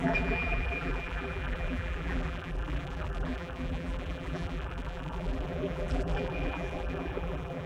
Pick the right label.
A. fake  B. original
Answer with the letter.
A